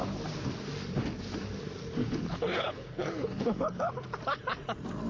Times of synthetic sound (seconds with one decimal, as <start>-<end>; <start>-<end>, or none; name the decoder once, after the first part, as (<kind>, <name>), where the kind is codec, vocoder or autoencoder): 2.0-3.9 (codec, HILCodec)